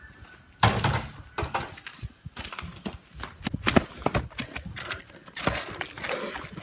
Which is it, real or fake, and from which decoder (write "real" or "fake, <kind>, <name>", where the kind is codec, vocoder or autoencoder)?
real